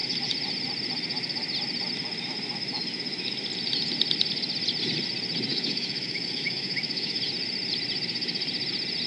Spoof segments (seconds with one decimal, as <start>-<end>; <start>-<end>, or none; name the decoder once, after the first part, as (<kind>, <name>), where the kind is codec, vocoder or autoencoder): 5.5-7.2 (autoencoder, DAC-VAE)